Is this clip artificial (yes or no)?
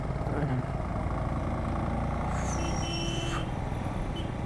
no